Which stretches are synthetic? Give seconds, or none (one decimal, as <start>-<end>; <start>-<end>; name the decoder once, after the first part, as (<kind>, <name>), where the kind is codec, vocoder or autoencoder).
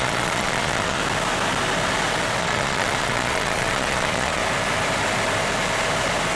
0.0-1.0 (vocoder, Vocos); 2.4-4.4